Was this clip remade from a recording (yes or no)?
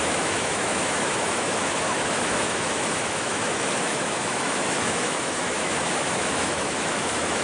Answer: yes